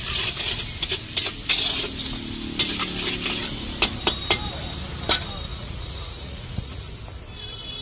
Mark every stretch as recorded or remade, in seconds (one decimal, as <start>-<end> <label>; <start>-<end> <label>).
0.0-5.5 recorded; 5.5-6.8 remade; 6.8-7.8 recorded